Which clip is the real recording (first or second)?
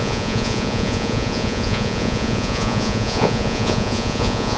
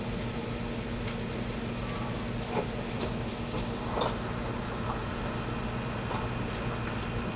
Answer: second